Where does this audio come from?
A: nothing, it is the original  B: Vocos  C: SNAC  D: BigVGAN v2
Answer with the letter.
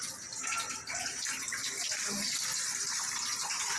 A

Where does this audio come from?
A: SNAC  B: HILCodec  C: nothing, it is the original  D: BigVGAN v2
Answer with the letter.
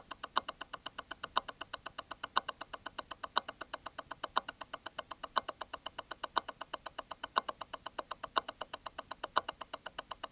C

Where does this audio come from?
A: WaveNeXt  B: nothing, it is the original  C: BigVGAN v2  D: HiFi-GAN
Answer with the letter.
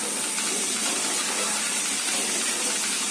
B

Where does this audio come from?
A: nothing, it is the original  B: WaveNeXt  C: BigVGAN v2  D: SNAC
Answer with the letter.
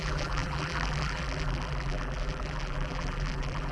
C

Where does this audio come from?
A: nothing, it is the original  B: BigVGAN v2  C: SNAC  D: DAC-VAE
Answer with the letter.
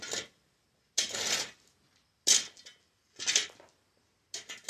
A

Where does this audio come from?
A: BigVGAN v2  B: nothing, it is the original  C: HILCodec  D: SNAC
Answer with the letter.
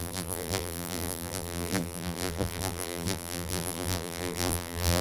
A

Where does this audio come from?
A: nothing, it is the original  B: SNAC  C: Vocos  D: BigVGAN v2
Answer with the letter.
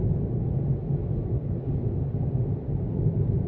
A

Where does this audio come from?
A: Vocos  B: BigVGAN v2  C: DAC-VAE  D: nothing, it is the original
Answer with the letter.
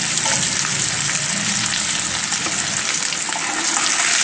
D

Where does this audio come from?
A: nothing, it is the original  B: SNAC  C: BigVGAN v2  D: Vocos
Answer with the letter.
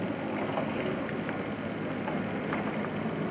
A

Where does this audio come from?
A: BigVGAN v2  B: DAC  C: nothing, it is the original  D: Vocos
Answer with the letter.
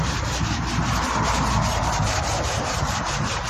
A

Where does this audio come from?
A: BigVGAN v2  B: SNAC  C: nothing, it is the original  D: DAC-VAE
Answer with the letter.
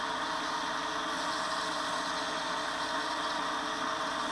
C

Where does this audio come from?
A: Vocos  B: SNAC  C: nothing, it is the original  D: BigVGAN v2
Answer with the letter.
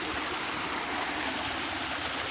D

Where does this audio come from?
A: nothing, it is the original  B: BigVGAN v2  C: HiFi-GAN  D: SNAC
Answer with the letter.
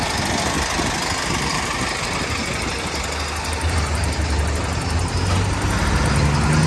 A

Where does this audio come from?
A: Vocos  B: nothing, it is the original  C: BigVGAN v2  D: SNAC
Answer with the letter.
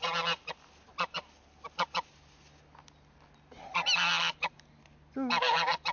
B